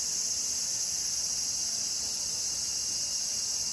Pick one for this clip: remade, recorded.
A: recorded